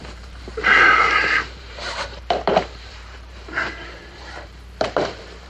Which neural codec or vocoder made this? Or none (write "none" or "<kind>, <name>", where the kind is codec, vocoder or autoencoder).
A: vocoder, BigVGAN v2